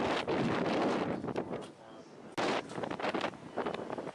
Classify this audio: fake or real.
real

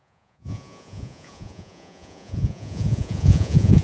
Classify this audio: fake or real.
fake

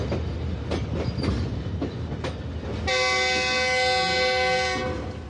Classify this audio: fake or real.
real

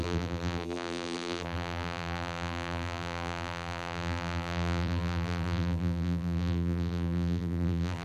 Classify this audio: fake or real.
fake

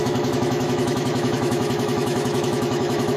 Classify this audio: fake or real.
fake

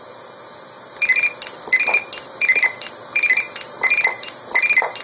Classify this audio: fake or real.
fake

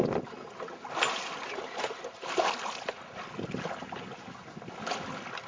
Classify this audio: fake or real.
real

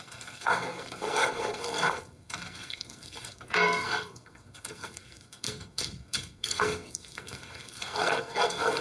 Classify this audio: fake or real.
fake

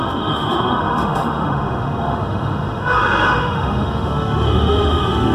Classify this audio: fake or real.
fake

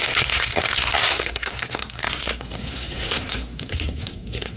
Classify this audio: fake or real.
fake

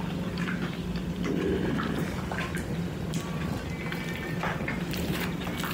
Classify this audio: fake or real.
real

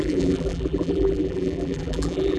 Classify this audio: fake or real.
fake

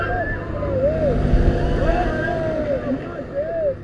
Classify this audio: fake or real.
real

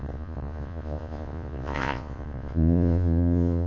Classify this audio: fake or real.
fake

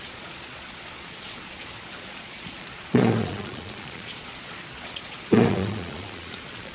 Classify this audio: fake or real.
fake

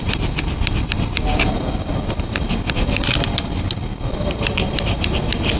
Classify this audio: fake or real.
real